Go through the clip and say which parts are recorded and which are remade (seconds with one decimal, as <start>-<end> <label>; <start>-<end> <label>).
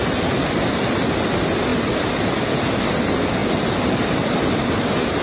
0.0-5.2 recorded